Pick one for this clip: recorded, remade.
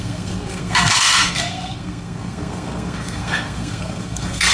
remade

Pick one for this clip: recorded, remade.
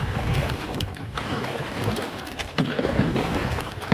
remade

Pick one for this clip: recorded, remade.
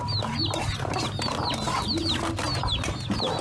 recorded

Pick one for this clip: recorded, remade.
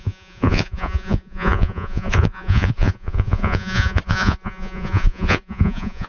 remade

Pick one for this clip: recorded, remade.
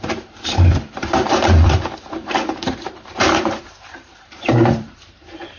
remade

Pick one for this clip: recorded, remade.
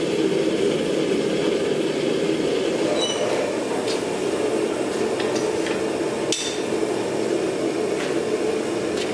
recorded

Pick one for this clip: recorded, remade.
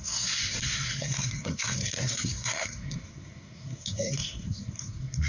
remade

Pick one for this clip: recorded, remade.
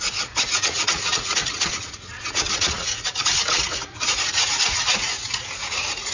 remade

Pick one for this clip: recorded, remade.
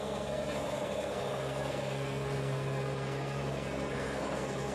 remade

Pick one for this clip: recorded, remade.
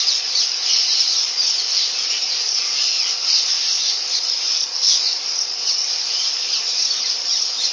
remade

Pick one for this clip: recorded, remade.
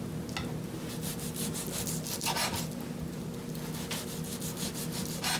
recorded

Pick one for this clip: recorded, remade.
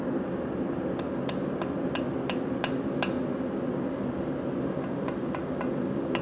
recorded